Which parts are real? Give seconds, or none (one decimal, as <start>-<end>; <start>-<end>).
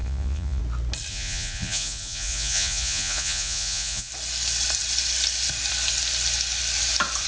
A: 0.6-1.1; 4.1-7.3